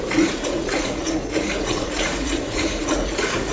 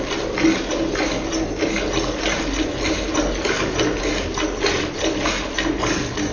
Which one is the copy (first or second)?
first